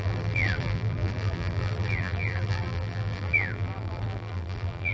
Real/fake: fake